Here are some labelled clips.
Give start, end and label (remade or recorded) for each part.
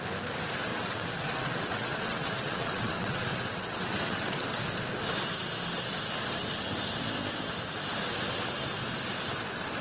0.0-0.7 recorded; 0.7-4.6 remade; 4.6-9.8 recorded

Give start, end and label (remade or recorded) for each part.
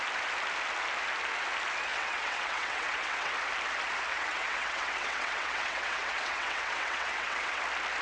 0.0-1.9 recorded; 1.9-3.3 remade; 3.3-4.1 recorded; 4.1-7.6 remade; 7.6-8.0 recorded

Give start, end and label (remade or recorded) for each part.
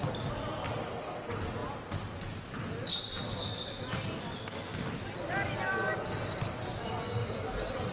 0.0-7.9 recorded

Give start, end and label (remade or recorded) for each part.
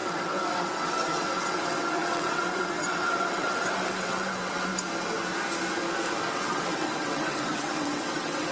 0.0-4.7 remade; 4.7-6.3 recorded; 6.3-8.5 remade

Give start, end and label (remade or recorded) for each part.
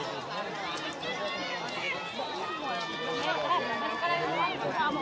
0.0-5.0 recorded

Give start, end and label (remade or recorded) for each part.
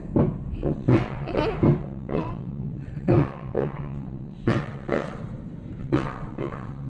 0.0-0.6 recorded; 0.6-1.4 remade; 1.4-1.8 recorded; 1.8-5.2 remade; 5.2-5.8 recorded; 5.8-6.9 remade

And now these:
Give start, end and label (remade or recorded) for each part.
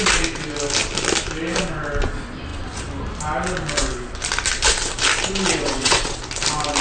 0.0-5.5 recorded; 5.5-6.2 remade; 6.2-6.8 recorded